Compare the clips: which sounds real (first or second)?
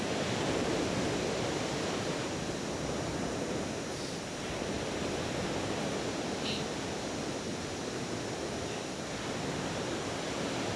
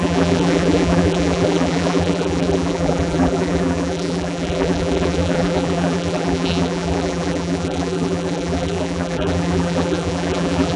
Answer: first